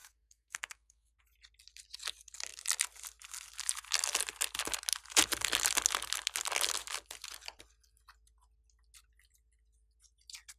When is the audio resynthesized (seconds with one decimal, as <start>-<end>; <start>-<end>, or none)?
0.0-1.2